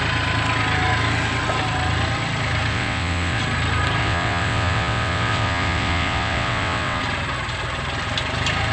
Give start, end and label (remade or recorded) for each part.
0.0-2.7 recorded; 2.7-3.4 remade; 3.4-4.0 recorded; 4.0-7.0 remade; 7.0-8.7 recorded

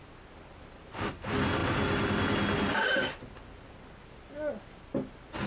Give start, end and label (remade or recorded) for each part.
0.0-5.5 recorded